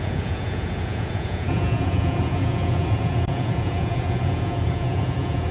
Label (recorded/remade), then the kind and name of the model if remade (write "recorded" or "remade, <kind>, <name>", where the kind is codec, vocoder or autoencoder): remade, vocoder, Vocos